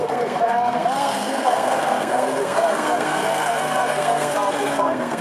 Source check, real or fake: fake